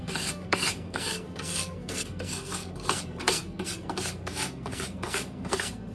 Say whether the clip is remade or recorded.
remade